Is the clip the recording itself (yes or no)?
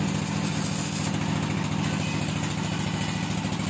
yes